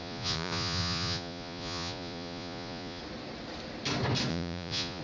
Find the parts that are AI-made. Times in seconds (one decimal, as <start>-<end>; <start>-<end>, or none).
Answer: 0.0-3.0; 4.3-5.0